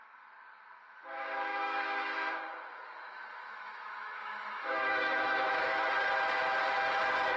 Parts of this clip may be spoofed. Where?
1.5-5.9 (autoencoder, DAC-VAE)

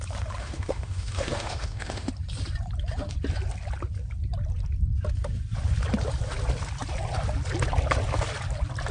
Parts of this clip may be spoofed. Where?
0.4-2.1 (autoencoder, DAC-VAE)